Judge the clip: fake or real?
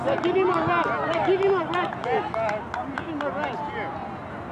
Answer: real